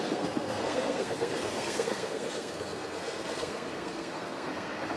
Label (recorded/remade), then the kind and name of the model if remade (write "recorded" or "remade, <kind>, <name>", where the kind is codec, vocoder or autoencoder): remade, codec, SNAC